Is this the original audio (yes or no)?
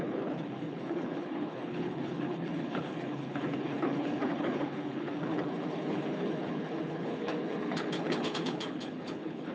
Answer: no